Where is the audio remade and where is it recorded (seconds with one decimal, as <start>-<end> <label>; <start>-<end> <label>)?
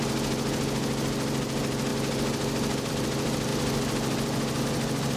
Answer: 0.0-5.2 recorded